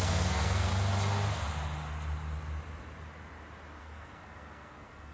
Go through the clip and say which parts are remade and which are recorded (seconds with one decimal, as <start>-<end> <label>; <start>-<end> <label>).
0.0-0.7 remade; 0.7-3.8 recorded; 3.8-5.1 remade